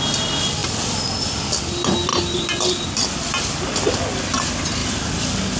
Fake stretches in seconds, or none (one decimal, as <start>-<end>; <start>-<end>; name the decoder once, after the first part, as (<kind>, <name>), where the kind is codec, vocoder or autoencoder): none